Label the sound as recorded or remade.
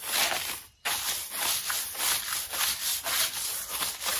recorded